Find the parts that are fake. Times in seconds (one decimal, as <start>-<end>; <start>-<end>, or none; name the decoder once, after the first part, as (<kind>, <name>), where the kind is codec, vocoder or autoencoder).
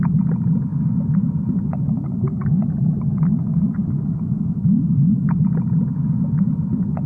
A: none